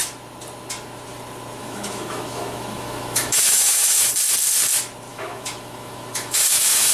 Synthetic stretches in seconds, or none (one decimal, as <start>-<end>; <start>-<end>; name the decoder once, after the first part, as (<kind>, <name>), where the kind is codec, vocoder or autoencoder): 1.6-4.1 (autoencoder, DAC-VAE); 5.1-6.9